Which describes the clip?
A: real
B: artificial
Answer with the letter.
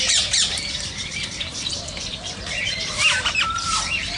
B